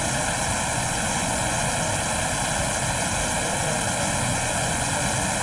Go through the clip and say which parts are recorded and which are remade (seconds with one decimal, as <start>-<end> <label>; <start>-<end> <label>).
0.0-0.7 recorded; 0.7-1.7 remade; 1.7-4.3 recorded; 4.3-4.9 remade; 4.9-5.4 recorded